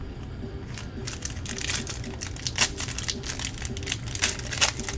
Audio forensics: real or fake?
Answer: real